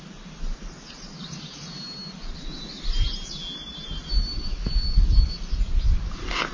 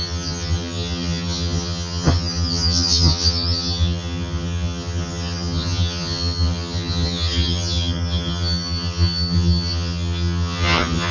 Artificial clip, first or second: second